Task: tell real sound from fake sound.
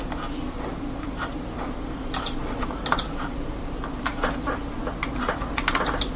real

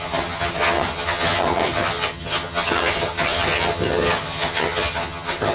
fake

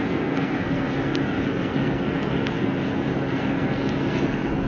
fake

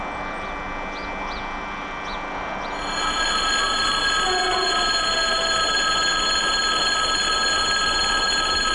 real